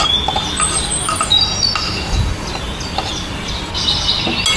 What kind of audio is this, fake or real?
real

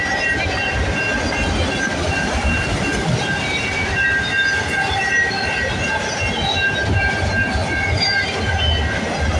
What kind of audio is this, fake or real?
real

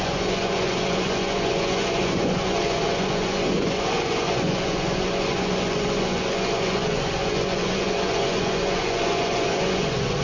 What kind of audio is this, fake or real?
fake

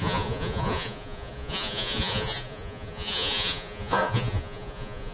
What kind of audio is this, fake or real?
fake